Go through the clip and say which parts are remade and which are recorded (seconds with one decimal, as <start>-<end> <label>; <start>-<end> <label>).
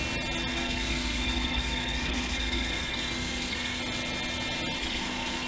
0.0-0.5 recorded; 0.5-3.8 remade; 3.8-4.8 recorded; 4.8-5.5 remade